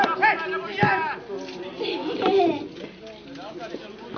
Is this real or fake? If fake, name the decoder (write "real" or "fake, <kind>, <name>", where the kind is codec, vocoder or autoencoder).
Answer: real